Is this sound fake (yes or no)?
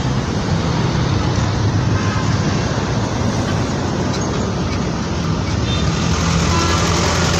no